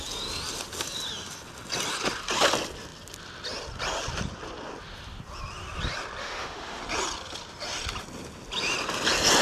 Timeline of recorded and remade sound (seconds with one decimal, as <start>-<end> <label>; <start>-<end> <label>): 0.0-6.2 recorded; 6.2-6.8 remade; 6.8-9.4 recorded